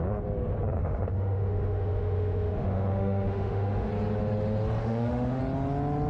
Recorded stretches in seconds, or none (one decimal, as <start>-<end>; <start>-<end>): 0.0-0.8; 3.9-4.8; 5.4-6.1